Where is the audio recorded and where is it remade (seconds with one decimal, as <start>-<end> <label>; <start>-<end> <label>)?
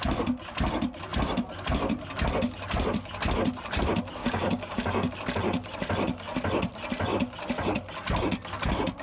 0.0-4.2 recorded; 4.2-5.1 remade; 5.1-9.0 recorded